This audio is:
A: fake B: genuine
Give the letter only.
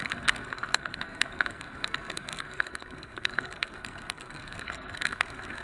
A